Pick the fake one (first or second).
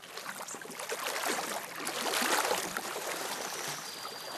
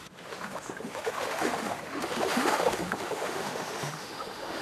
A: second